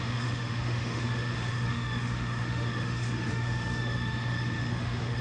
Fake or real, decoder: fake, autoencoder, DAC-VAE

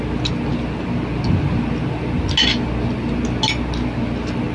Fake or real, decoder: real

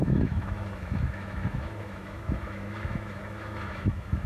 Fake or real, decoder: fake, autoencoder, DAC-VAE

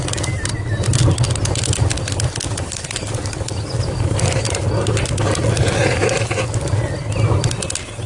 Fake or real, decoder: real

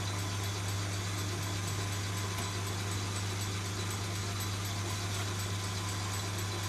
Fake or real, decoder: real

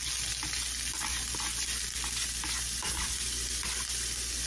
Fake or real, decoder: real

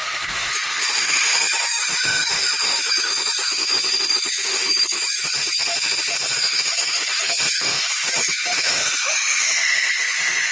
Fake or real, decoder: fake, autoencoder, DAC-VAE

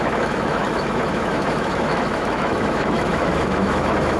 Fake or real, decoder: fake, autoencoder, DAC-VAE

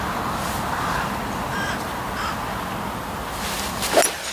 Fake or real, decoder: real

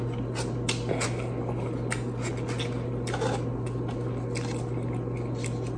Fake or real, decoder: real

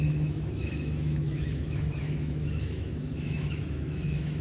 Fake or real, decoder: fake, autoencoder, DAC-VAE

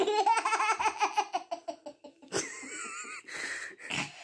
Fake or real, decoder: real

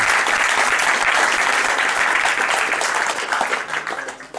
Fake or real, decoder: real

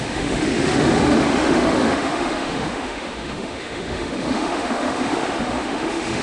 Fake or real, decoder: fake, autoencoder, DAC-VAE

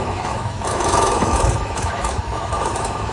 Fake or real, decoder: fake, autoencoder, DAC-VAE